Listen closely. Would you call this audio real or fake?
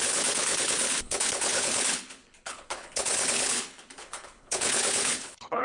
fake